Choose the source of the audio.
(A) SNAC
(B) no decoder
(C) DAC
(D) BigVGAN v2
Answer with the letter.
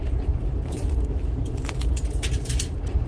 D